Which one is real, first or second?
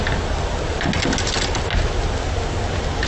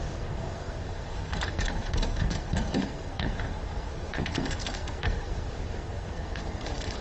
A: first